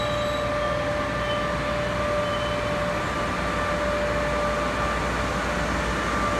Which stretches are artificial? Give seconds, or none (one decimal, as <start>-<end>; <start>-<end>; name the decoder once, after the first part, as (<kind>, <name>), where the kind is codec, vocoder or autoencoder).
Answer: none